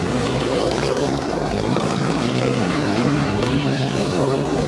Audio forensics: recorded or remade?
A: remade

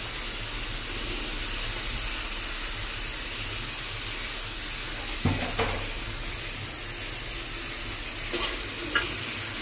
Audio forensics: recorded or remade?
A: recorded